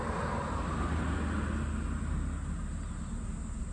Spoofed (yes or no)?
no